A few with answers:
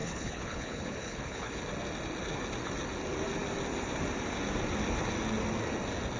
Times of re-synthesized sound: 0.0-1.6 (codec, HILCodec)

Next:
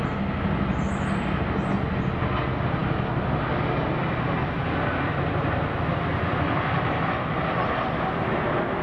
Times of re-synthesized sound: 6.3-8.2 (vocoder, BigVGAN v2)

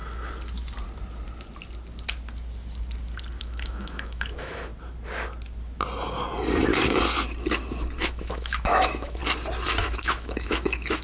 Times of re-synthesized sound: 3.4-4.7 (autoencoder, DAC-VAE); 8.1-9.2; 9.8-11.0

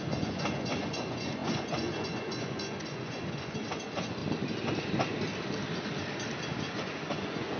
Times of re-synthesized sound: 0.0-4.2 (vocoder, Vocos); 6.6-7.6

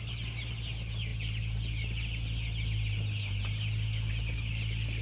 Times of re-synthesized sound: none

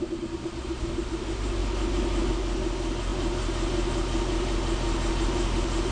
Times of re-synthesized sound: none

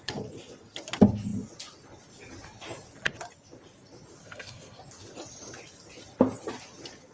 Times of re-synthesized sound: 4.2-4.8 (codec, SNAC)